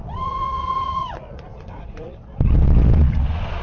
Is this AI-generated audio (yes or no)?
yes